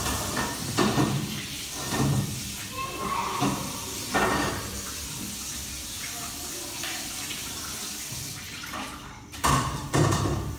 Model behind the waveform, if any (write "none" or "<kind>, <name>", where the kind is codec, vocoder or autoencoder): vocoder, BigVGAN v2